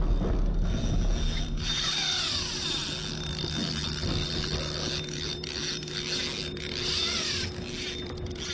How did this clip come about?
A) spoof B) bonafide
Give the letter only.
B